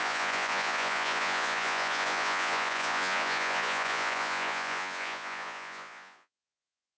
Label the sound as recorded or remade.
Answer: remade